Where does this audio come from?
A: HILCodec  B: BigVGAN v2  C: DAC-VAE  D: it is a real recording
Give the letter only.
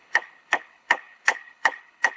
A